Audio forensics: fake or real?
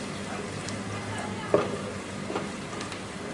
real